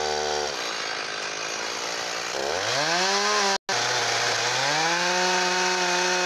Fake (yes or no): no